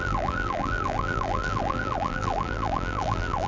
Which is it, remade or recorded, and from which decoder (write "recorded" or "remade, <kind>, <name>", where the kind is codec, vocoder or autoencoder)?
remade, vocoder, BigVGAN v2